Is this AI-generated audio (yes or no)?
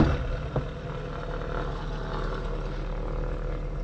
no